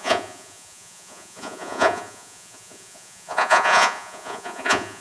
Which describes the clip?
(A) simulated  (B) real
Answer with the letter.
A